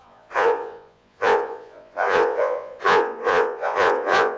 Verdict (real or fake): fake